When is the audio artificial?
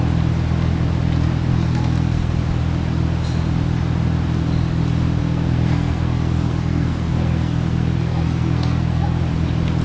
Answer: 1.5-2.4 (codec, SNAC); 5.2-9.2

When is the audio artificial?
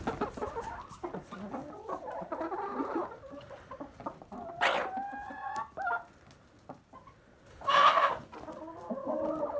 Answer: 7.5-8.1 (autoencoder, DAC-VAE)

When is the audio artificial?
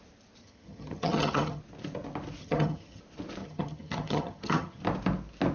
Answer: 0.4-1.6 (vocoder, HiFi-GAN); 2.4-3.0; 3.4-4.8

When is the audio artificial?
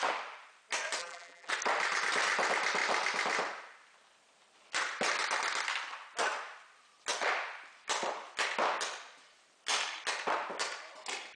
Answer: 1.0-1.5 (vocoder, BigVGAN v2)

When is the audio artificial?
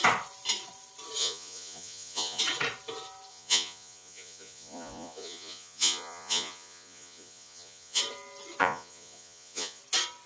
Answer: 1.2-2.4 (vocoder, Vocos); 3.3-8.0; 8.6-9.8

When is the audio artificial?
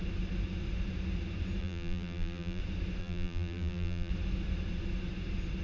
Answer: 1.6-2.6 (vocoder, BigVGAN v2); 3.0-4.1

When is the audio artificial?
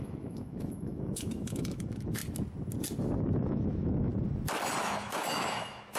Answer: 0.0-2.2 (autoencoder, DAC-VAE); 3.4-4.1; 4.8-6.0